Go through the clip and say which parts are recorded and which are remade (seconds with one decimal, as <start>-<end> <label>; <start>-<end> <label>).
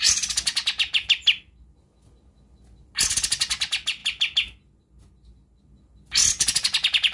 0.0-7.1 recorded